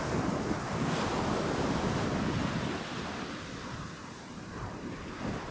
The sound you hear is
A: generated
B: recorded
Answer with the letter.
B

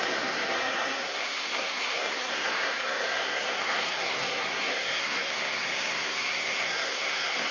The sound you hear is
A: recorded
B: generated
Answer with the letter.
B